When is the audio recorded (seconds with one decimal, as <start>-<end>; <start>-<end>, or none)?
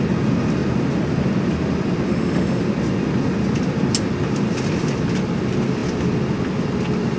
0.0-2.1; 2.6-7.2